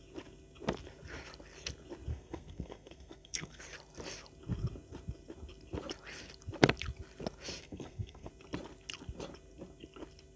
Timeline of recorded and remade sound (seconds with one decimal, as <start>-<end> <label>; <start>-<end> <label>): 0.0-2.1 recorded; 2.1-3.6 remade; 3.6-7.6 recorded; 7.6-8.3 remade; 8.3-10.4 recorded